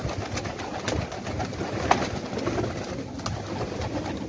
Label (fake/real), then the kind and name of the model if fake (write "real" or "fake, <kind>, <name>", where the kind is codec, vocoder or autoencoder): real